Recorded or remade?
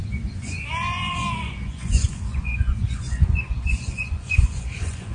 remade